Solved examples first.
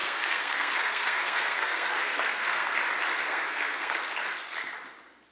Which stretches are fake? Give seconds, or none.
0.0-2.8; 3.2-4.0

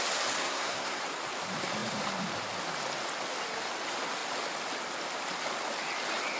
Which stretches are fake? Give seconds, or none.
0.4-1.0

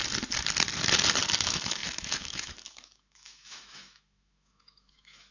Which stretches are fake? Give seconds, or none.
1.4-5.3

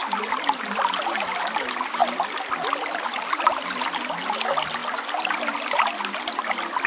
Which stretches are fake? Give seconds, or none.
2.0-3.2

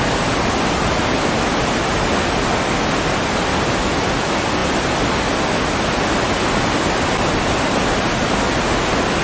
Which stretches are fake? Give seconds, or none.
none

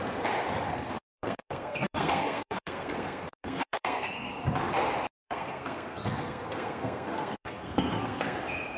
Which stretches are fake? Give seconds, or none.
0.7-4.3; 5.2-8.4